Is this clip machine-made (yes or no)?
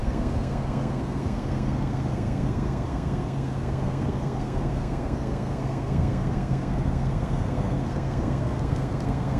yes